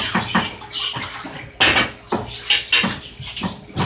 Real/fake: real